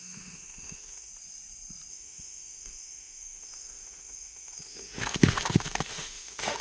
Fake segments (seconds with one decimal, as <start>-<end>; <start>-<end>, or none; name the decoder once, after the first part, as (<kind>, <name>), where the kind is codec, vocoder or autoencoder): 0.0-1.1 (autoencoder, DAC-VAE); 1.9-6.6